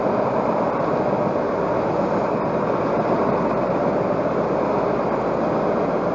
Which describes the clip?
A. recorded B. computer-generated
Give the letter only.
A